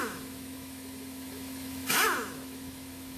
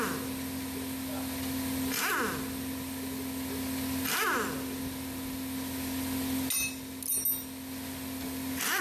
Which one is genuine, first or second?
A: second